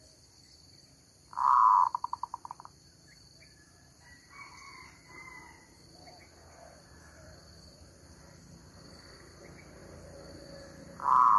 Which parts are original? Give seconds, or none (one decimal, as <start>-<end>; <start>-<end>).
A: 0.0-1.9; 6.0-11.4